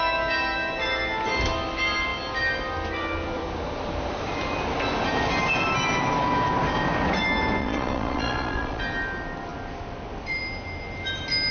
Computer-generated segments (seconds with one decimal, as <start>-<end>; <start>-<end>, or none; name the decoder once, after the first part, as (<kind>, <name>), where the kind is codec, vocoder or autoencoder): 7.6-8.8 (vocoder, Vocos)